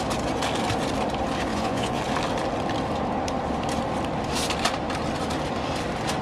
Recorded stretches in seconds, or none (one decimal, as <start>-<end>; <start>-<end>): 0.0-1.5; 2.0-6.2